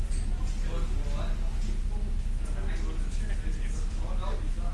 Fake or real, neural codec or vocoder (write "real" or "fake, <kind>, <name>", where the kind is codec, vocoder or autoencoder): real